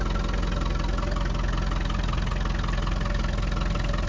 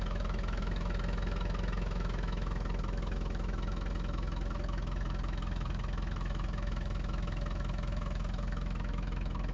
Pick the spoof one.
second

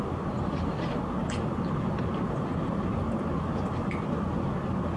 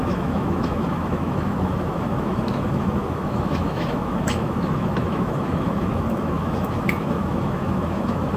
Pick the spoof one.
second